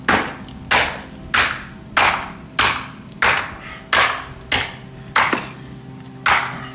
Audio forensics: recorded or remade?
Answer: recorded